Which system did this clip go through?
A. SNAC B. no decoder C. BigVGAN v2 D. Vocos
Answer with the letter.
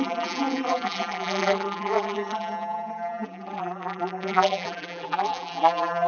C